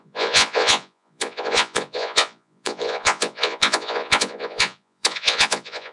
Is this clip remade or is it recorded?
remade